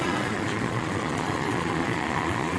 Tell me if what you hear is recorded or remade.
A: remade